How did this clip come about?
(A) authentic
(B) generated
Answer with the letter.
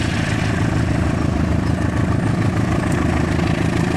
A